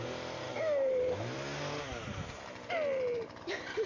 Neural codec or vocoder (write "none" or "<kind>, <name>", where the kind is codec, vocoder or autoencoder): none